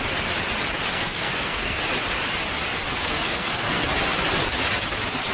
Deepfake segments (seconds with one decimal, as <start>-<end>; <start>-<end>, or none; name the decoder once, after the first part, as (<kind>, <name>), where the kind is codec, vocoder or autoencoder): 0.9-1.8 (codec, SNAC); 3.0-3.8